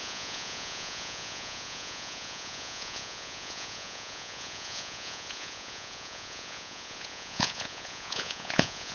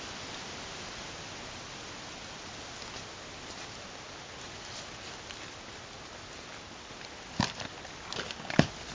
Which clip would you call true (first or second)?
second